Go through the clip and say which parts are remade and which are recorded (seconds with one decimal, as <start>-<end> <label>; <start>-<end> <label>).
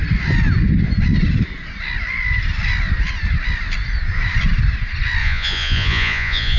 0.0-5.2 recorded; 5.2-6.6 remade